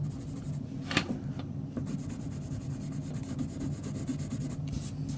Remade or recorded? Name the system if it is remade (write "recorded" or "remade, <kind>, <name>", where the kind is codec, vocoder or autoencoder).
recorded